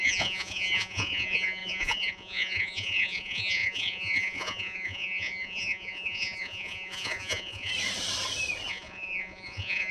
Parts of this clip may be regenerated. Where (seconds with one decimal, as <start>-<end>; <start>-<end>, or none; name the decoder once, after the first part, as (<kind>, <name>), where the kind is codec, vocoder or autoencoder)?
0.0-7.7 (vocoder, Vocos); 8.7-9.9